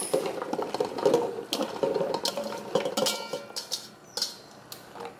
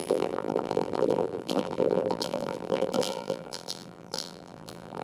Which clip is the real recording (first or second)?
first